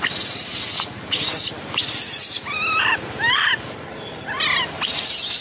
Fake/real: real